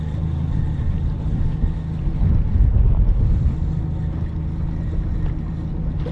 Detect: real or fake real